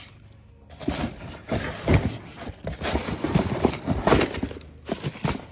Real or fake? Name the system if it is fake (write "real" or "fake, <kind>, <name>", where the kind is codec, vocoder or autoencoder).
real